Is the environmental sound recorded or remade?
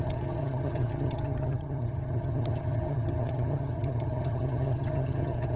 remade